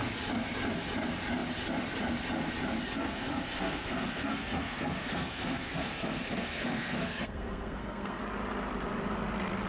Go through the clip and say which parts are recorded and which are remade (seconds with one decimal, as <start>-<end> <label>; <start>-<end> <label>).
0.0-3.0 recorded; 3.0-8.2 remade; 8.2-9.7 recorded

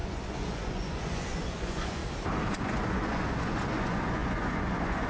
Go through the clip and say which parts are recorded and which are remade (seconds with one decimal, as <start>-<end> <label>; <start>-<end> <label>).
0.0-2.0 remade; 2.0-2.5 recorded; 2.5-5.1 remade

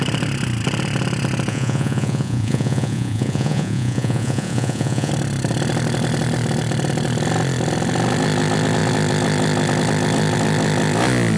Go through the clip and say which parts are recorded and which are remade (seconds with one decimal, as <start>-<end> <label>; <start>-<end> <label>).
0.0-1.5 recorded; 1.5-5.1 remade; 5.1-11.4 recorded

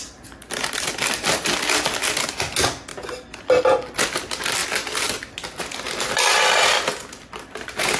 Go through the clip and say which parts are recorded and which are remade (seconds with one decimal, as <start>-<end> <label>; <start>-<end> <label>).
0.0-0.4 recorded; 0.4-1.5 remade; 1.5-4.6 recorded; 4.6-5.3 remade; 5.3-5.7 recorded; 5.7-6.5 remade; 6.5-8.0 recorded

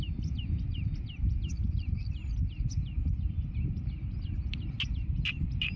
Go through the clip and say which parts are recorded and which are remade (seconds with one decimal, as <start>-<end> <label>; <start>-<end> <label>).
0.0-5.8 recorded